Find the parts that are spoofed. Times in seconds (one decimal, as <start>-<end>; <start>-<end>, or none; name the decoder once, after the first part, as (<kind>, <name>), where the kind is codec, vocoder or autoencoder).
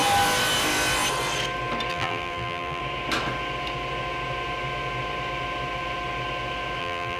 1.9-2.8 (vocoder, BigVGAN v2); 6.8-7.2